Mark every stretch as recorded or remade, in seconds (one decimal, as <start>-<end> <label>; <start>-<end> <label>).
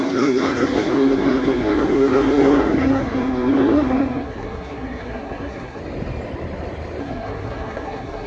0.0-5.8 remade; 5.8-7.0 recorded; 7.0-8.3 remade